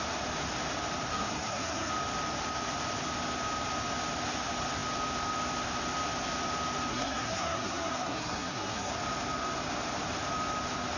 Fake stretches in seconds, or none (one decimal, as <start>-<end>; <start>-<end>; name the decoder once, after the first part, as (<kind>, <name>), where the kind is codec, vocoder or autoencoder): 1.1-1.9 (codec, SNAC); 6.9-8.9